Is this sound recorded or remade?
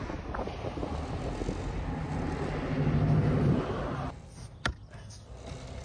recorded